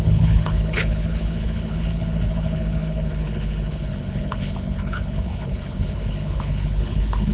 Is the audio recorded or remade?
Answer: remade